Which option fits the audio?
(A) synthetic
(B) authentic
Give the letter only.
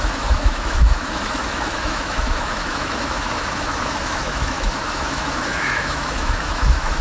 A